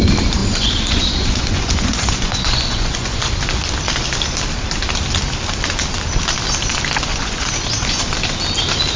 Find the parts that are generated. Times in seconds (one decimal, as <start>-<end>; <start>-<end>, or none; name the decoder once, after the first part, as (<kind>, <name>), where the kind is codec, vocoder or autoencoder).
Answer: 0.4-3.3 (vocoder, Vocos); 7.1-8.0